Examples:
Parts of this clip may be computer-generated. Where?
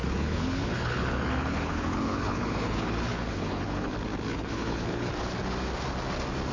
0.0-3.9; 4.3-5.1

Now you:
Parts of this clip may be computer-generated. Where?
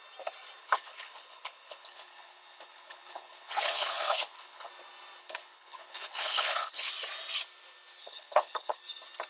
0.6-4.7; 5.2-6.9; 8.0-8.8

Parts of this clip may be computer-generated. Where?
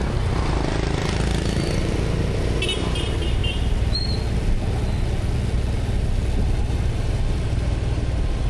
none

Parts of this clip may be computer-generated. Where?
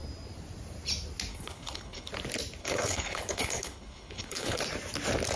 1.3-2.1; 2.6-4.6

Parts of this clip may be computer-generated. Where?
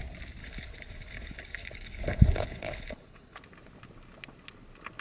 0.4-3.4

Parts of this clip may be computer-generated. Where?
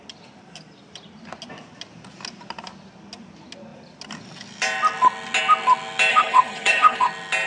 6.1-7.1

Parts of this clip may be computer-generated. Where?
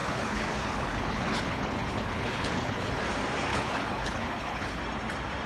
0.0-3.0; 3.5-4.8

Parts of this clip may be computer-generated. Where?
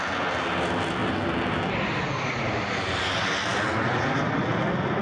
none